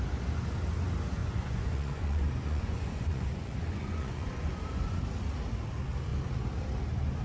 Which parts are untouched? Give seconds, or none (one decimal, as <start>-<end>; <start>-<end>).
0.0-1.2; 5.0-7.2